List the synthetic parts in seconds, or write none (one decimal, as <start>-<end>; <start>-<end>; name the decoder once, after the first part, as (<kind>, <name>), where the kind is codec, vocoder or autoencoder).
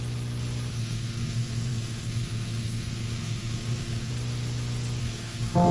0.7-4.1 (codec, SNAC); 5.0-5.7